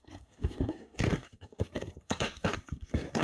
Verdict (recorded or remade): remade